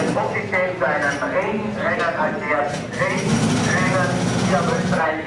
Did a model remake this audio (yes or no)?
no